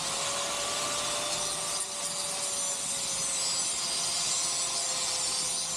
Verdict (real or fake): real